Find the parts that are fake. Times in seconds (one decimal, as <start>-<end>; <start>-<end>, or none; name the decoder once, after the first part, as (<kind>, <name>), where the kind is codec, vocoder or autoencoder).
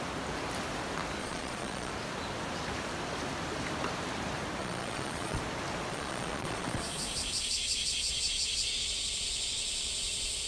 1.2-1.9 (vocoder, Vocos); 4.6-5.4; 5.9-10.5